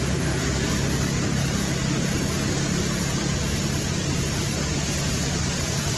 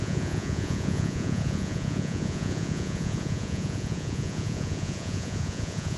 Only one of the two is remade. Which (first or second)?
second